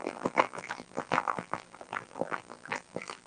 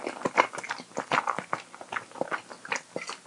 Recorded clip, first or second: second